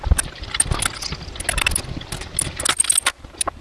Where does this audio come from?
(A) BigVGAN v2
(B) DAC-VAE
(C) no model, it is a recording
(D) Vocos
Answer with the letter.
C